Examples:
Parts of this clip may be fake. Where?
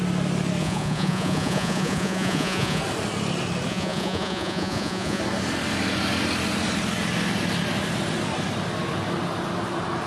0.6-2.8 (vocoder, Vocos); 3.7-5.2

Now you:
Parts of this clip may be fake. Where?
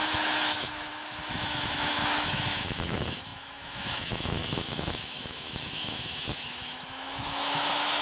0.0-8.0 (autoencoder, DAC-VAE)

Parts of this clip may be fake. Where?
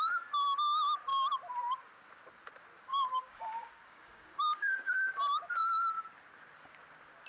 2.9-4.9 (codec, DAC)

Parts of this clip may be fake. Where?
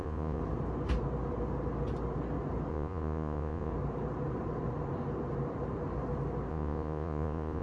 0.0-0.4 (vocoder, Vocos); 2.7-3.7; 6.5-7.6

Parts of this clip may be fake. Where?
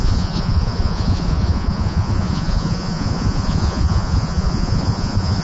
0.0-5.4 (vocoder, Vocos)